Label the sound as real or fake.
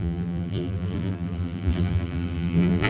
fake